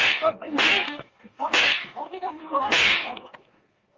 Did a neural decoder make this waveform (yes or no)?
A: yes